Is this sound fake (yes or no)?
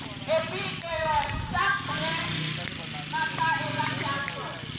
no